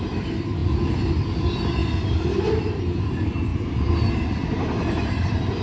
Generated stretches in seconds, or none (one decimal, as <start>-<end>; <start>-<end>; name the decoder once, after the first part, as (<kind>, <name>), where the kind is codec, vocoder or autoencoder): none